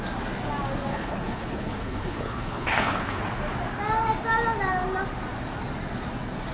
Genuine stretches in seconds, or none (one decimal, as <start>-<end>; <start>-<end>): 0.0-0.9; 3.2-6.5